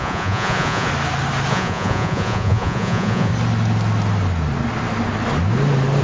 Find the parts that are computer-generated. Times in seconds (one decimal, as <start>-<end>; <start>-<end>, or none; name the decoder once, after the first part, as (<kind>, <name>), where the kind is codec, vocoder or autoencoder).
0.0-0.9 (vocoder, Vocos); 1.5-3.3

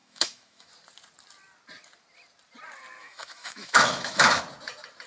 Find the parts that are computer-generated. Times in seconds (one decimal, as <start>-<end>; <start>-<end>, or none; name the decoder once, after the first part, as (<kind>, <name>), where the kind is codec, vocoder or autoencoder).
0.0-0.7 (autoencoder, DAC-VAE); 3.0-4.4

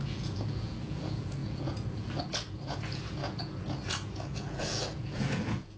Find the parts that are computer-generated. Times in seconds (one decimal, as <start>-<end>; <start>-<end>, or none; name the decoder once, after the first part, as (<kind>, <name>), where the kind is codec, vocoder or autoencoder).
0.0-5.8 (vocoder, Vocos)

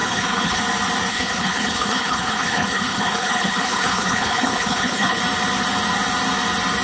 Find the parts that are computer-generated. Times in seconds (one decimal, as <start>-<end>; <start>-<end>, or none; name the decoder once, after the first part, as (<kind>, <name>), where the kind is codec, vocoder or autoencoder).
0.0-0.6 (codec, HILCodec); 1.1-5.2

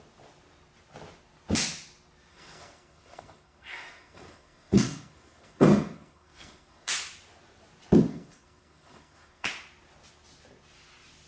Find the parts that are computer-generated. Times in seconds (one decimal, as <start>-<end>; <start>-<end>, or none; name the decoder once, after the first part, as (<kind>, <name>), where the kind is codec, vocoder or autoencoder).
2.3-6.9 (codec, SNAC); 8.1-9.5

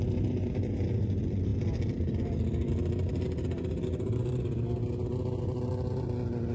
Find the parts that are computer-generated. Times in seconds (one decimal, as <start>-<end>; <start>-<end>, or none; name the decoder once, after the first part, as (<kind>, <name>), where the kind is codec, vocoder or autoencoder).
none